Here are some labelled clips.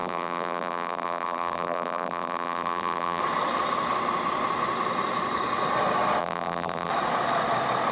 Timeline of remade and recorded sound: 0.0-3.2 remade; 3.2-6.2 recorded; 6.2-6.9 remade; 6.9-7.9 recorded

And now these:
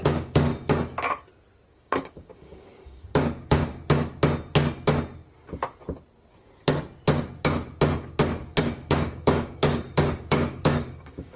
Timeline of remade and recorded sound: 0.0-0.5 remade; 0.5-1.7 recorded; 1.7-3.7 remade; 3.7-8.6 recorded; 8.6-11.4 remade

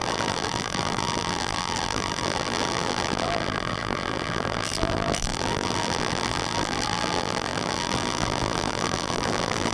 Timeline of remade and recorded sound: 0.0-9.7 remade